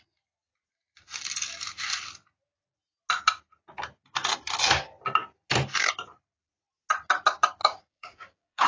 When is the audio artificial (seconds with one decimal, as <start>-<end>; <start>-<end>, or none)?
7.6-8.7